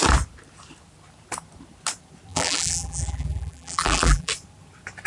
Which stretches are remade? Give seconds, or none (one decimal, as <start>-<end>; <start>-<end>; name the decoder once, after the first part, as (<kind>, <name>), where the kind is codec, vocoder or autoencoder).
2.3-4.3 (vocoder, BigVGAN v2)